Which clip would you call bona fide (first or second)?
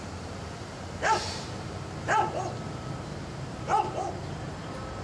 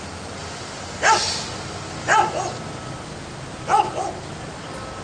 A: second